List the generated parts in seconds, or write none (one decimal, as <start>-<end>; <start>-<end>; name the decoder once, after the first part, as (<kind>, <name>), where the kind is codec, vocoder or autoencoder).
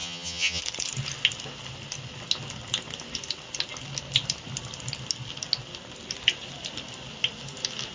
0.0-0.6 (vocoder, HiFi-GAN)